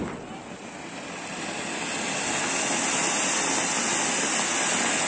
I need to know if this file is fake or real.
real